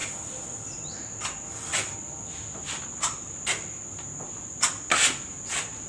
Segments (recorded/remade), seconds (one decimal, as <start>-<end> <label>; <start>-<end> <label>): 0.0-5.9 recorded